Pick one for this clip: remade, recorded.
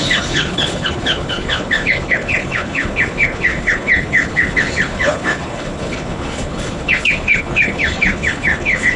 remade